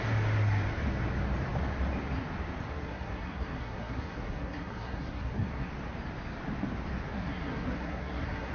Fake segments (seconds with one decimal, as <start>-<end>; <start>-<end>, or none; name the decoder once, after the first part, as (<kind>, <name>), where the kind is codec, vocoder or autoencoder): 2.7-5.7 (codec, SNAC); 7.1-8.5